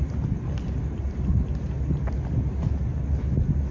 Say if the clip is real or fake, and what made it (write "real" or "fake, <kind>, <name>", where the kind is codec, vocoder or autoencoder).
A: real